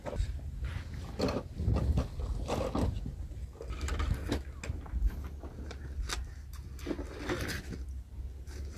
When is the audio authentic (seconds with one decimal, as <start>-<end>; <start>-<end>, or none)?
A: 0.0-8.8